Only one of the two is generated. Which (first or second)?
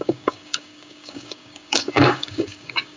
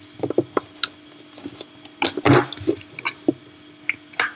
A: first